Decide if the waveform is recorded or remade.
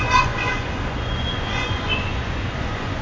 remade